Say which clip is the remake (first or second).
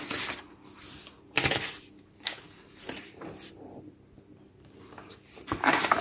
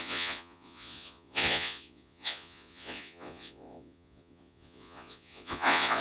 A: second